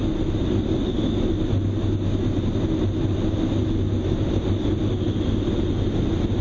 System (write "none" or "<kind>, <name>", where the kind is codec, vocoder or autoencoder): none